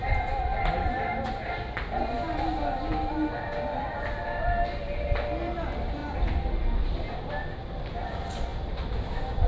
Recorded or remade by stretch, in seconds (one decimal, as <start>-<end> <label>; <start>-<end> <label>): 0.0-9.5 recorded